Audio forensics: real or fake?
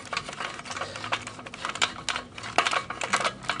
real